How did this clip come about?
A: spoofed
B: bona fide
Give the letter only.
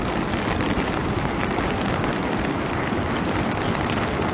B